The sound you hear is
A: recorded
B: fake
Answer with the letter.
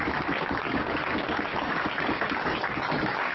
B